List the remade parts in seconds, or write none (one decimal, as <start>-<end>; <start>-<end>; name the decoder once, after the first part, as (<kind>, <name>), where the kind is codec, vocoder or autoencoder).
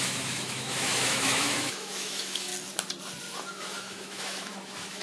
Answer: 0.0-2.5 (autoencoder, DAC-VAE); 3.4-5.0